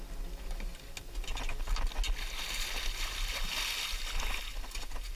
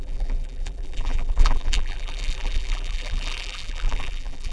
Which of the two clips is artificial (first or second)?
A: second